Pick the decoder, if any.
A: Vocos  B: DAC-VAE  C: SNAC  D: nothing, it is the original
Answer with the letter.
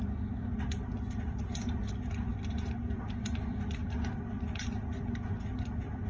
D